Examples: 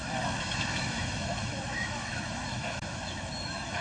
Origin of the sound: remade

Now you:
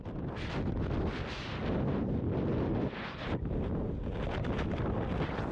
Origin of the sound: recorded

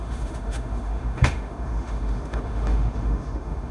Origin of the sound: remade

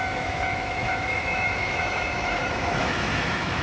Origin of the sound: remade